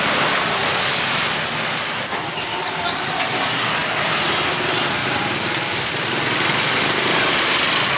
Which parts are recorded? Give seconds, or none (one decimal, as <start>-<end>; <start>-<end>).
0.0-2.5; 3.5-8.0